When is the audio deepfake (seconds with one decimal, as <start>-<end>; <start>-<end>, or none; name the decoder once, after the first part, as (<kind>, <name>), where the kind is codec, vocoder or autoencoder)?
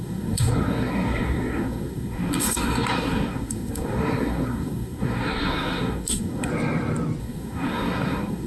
0.0-6.5 (codec, SNAC); 7.2-8.5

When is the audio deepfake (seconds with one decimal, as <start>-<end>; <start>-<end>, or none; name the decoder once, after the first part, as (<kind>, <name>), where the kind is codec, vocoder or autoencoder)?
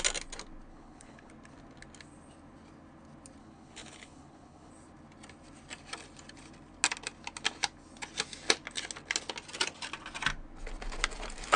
0.7-1.3 (codec, HILCodec); 3.4-4.7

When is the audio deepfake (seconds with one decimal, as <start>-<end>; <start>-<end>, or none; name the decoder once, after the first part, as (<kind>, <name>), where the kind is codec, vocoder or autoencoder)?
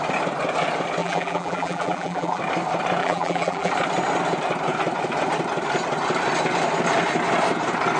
1.0-2.4 (vocoder, BigVGAN v2); 3.0-3.7